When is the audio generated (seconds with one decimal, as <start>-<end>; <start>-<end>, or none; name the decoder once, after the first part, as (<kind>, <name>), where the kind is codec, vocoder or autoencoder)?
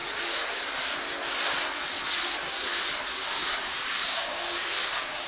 3.2-5.3 (codec, DAC)